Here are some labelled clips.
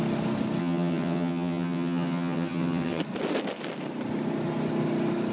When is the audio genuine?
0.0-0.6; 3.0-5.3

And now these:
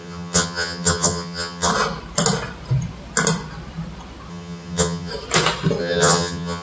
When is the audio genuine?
1.7-4.3; 5.1-5.8